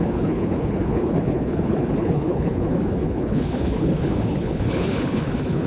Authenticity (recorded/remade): remade